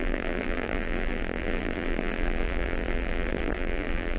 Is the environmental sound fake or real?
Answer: fake